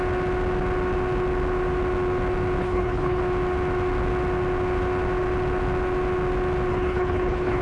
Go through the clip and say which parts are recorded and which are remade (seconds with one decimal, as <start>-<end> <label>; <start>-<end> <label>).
0.0-2.6 recorded; 2.6-3.2 remade; 3.2-6.7 recorded; 6.7-7.6 remade